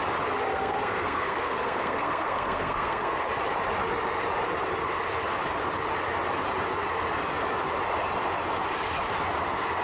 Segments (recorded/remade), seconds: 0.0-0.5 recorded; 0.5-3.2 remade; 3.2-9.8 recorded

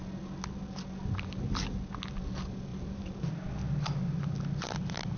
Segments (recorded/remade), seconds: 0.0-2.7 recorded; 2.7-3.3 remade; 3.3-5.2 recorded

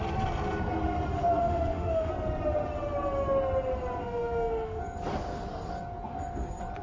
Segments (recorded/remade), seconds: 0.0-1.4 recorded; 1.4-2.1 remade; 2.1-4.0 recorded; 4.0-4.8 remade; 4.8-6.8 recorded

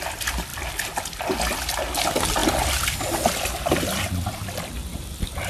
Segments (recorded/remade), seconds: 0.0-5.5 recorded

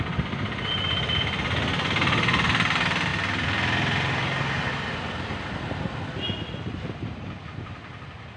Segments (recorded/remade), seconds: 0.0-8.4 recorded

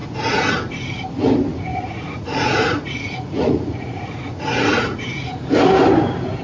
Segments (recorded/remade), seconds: 0.0-0.5 remade; 0.5-1.7 recorded; 1.7-5.5 remade; 5.5-6.4 recorded

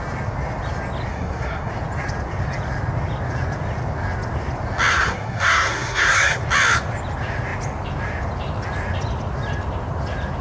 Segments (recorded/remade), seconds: 0.0-1.1 recorded; 1.1-1.7 remade; 1.7-4.9 recorded; 4.9-6.4 remade; 6.4-10.4 recorded